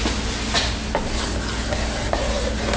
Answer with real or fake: real